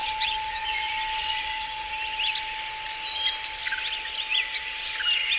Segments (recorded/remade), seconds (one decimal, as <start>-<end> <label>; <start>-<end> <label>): 0.0-1.9 remade; 1.9-5.4 recorded